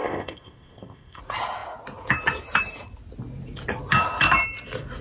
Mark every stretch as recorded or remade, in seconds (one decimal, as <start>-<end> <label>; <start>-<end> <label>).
0.0-1.2 remade; 1.2-5.0 recorded